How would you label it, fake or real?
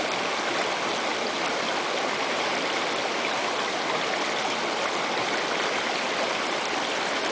real